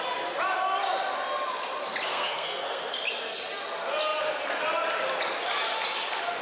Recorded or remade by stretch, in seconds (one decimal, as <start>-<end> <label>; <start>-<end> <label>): 0.0-2.1 recorded; 2.1-2.8 remade; 2.8-6.4 recorded